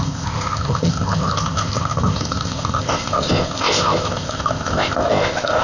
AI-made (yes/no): yes